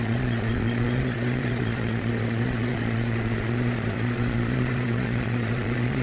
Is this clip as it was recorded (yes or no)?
no